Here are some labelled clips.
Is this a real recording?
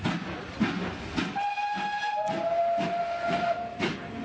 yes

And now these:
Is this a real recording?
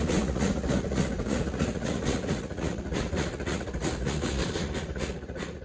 no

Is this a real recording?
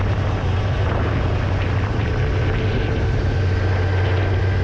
yes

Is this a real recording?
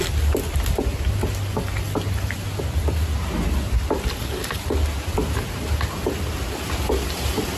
yes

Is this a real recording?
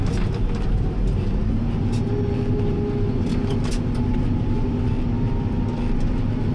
yes